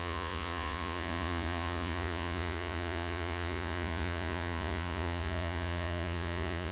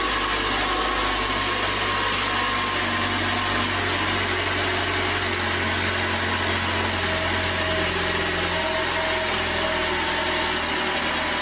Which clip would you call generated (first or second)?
first